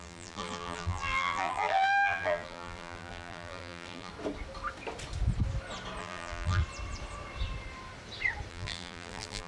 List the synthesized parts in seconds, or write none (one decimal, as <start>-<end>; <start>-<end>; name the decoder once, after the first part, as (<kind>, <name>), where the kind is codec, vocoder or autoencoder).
0.0-4.1 (vocoder, BigVGAN v2); 6.0-6.6; 8.5-9.5